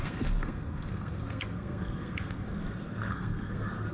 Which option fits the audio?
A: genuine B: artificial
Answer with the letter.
B